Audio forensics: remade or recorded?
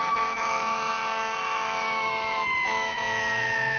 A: remade